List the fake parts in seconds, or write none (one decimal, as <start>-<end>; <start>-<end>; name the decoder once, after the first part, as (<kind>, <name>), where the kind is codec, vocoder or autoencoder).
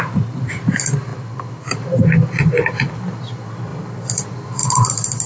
none